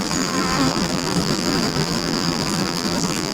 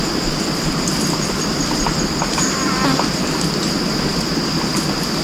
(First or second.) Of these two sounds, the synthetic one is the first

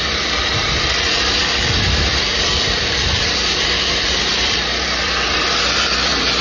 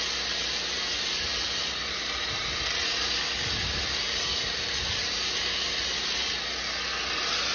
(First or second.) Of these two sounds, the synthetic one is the first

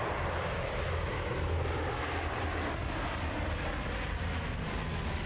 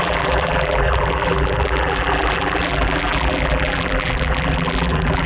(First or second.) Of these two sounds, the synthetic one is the second